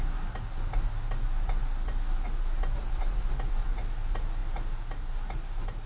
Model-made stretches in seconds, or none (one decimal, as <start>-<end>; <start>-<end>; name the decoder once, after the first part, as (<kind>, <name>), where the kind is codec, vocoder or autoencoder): 2.8-3.7 (vocoder, BigVGAN v2)